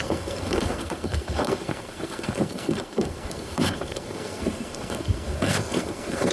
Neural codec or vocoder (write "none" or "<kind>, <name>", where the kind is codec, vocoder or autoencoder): codec, SNAC